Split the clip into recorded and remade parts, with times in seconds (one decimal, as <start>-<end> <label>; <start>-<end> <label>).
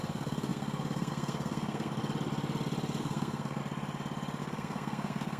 0.0-2.0 remade; 2.0-3.0 recorded; 3.0-3.6 remade; 3.6-4.4 recorded; 4.4-5.4 remade